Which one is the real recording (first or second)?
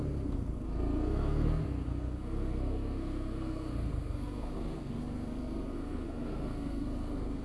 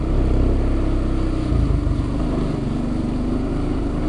second